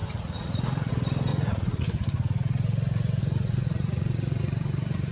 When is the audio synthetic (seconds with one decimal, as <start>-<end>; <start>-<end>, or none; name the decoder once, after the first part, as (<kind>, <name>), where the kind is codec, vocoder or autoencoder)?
0.0-0.9 (vocoder, Vocos); 1.3-1.8; 3.2-4.4